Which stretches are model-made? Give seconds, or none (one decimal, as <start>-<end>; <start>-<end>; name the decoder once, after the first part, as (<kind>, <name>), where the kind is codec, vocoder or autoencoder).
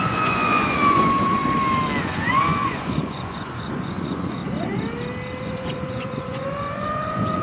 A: 0.0-1.4 (vocoder, Vocos); 2.0-4.4; 5.4-7.4